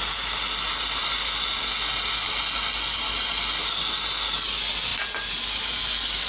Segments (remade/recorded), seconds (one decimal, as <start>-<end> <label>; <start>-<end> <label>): 0.0-4.9 recorded; 4.9-5.8 remade; 5.8-6.3 recorded